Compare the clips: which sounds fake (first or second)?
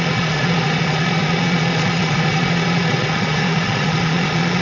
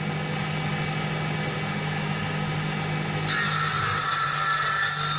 first